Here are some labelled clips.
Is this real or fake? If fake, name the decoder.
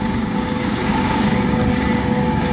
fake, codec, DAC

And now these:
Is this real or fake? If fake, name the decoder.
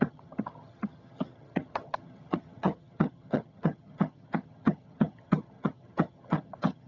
fake, vocoder, HiFi-GAN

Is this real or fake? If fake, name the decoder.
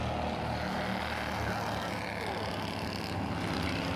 real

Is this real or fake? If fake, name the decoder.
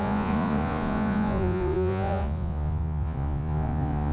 fake, vocoder, Vocos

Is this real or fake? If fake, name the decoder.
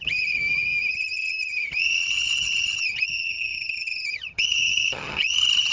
fake, vocoder, HiFi-GAN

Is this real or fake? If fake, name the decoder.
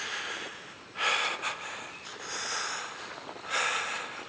real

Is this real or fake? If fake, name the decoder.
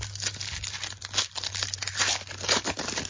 real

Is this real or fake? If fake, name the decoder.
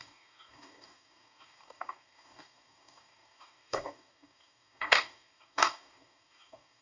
fake, codec, DAC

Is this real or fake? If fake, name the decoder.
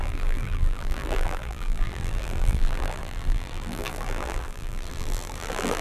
fake, vocoder, BigVGAN v2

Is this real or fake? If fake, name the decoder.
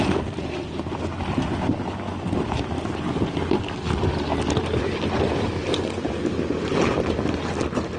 real